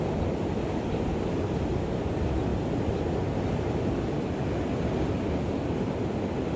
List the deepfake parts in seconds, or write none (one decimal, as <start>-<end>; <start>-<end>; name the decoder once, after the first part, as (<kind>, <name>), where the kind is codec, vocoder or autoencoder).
none